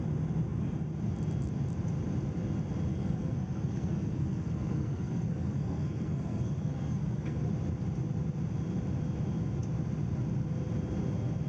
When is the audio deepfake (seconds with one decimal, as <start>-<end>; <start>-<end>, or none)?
2.9-7.5